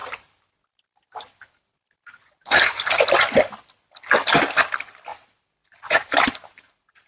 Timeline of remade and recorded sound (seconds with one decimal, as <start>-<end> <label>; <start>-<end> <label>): 0.0-3.2 remade; 3.2-5.1 recorded; 5.1-7.1 remade